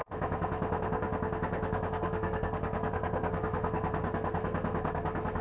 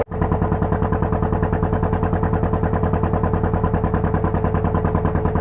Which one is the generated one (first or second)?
first